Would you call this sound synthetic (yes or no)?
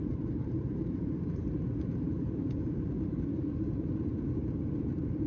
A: yes